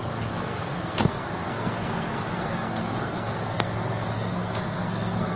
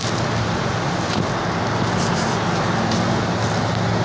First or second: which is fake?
first